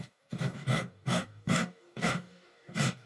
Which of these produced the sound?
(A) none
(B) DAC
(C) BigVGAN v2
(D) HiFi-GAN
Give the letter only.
B